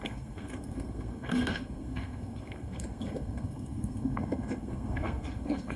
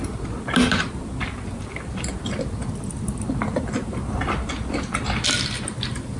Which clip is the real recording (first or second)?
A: second